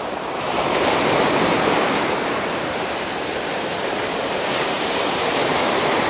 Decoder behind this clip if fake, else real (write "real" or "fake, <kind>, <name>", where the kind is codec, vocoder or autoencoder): fake, vocoder, BigVGAN v2